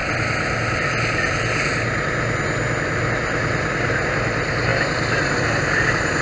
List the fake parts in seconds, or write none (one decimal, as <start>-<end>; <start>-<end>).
3.7-6.2